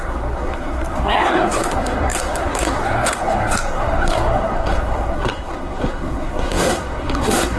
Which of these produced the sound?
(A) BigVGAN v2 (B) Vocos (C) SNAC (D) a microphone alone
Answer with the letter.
C